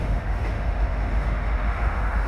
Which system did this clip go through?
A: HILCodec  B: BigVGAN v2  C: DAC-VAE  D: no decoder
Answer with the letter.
C